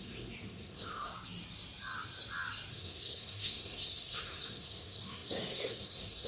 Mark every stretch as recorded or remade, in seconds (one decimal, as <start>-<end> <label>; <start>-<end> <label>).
0.0-1.1 remade; 1.1-2.7 recorded; 2.7-6.3 remade